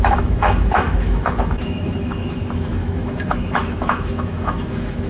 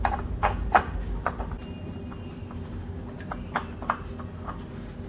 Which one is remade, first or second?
first